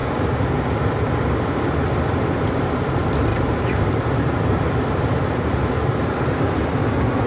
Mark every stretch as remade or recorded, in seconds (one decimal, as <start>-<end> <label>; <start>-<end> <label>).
0.0-3.3 recorded; 3.3-6.6 remade; 6.6-7.3 recorded